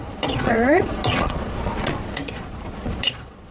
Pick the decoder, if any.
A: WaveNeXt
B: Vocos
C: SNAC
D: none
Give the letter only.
B